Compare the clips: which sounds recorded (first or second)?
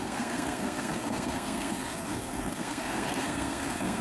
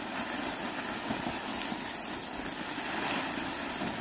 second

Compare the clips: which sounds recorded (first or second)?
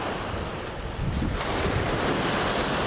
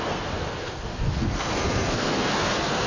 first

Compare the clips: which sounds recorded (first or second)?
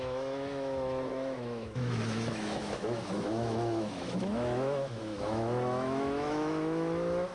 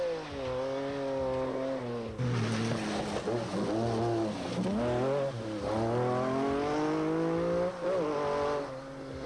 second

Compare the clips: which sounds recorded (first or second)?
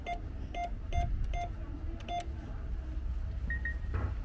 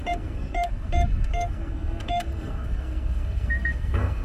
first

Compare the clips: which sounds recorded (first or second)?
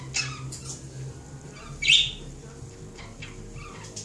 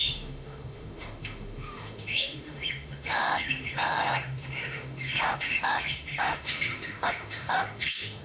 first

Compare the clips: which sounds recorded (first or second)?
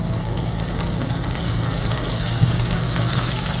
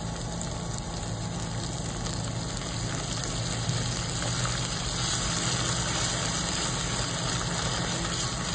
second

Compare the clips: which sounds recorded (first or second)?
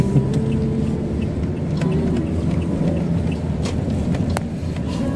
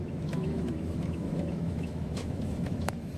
first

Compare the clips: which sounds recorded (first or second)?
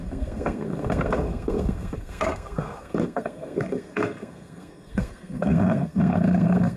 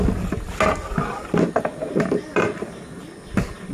second